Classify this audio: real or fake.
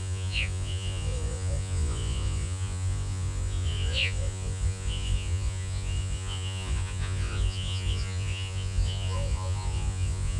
fake